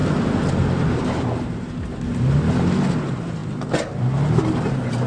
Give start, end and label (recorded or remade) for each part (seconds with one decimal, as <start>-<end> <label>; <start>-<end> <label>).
0.0-5.1 recorded